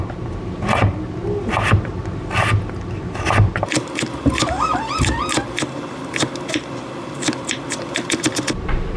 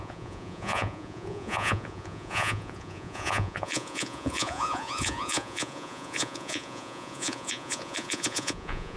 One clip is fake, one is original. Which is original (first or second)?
first